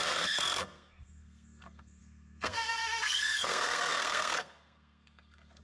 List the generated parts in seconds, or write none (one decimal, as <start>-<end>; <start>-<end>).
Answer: 0.0-5.6